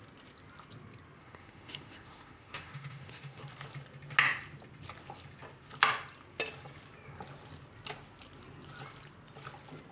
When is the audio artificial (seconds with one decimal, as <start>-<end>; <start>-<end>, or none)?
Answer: 1.2-3.4